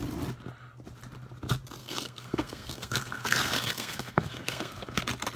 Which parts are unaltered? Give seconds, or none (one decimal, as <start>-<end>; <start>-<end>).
0.0-1.8; 5.0-5.4

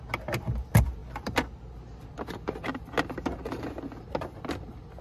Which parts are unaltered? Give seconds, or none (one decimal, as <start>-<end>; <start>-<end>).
0.0-5.0

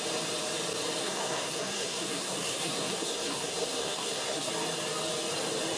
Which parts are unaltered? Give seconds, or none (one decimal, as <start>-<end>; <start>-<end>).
0.0-1.0; 4.5-5.8

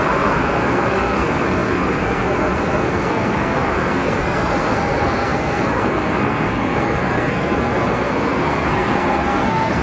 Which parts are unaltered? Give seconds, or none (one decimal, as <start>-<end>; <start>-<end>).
none

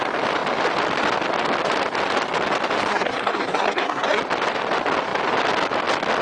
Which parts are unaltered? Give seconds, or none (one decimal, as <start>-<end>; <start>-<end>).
0.0-2.9; 4.2-6.2

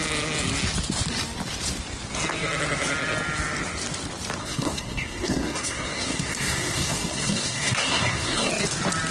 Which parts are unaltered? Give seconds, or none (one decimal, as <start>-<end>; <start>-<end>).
0.0-4.4; 8.5-9.1

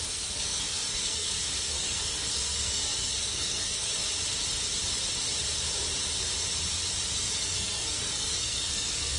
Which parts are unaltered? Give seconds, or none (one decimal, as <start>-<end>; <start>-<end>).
3.9-7.1

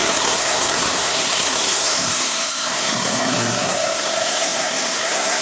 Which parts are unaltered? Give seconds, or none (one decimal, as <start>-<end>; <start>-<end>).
none